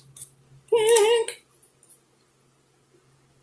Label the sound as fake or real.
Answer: real